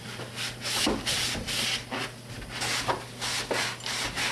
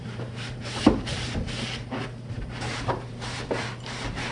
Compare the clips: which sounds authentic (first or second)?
first